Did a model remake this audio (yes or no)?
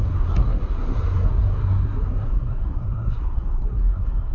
yes